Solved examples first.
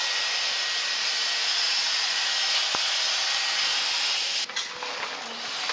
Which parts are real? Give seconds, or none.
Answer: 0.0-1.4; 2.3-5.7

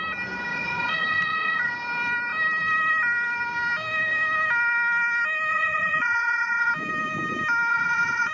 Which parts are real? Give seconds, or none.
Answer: 0.0-0.5; 1.7-5.5; 6.7-7.7

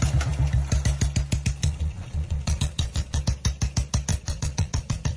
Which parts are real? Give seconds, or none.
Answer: 0.0-1.6; 3.2-4.1

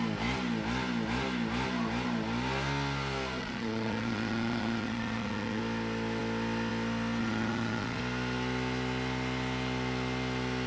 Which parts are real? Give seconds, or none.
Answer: 0.0-3.4; 5.6-7.2; 8.0-10.7

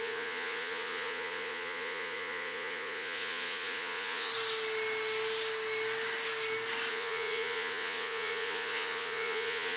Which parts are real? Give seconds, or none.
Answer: 4.3-6.9